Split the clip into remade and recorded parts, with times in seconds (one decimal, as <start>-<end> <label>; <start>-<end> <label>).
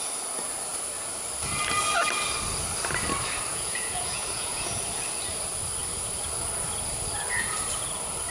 0.0-3.5 recorded; 3.5-4.8 remade; 4.8-8.3 recorded